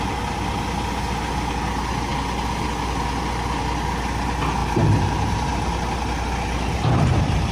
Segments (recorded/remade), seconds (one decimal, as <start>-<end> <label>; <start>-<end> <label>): 0.0-4.6 recorded; 4.6-7.5 remade